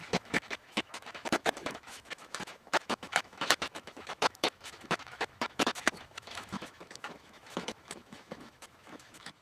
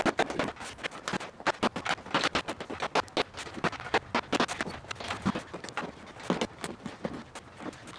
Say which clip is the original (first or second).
second